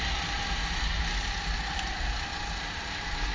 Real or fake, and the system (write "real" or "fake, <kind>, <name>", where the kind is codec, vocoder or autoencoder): real